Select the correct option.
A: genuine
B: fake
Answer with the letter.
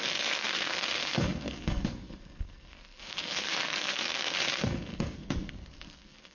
B